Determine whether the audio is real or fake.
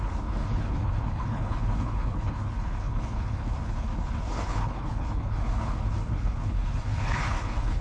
fake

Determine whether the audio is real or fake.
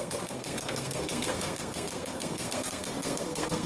fake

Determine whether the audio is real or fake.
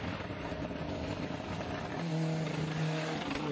real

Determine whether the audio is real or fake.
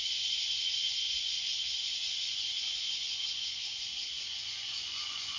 fake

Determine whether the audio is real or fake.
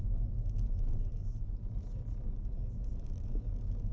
real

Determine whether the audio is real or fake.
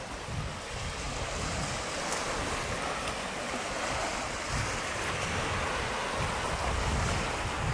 real